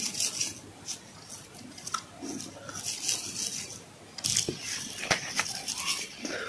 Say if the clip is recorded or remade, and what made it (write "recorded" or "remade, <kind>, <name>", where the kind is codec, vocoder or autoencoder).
recorded